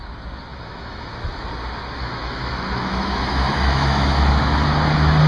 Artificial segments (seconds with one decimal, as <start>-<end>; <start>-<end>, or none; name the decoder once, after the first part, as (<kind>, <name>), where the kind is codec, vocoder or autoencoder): 0.5-1.1 (autoencoder, DAC-VAE); 2.0-4.3